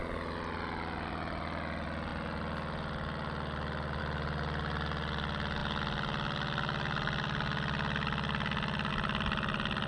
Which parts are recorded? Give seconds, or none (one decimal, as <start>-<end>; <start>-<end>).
0.0-9.9